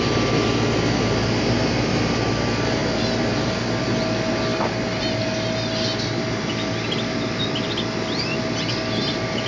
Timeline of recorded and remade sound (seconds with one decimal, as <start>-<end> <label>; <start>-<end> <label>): 0.0-9.5 recorded